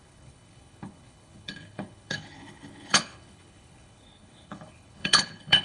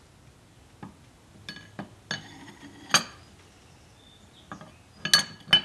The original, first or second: second